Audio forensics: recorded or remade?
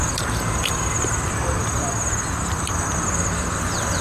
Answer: recorded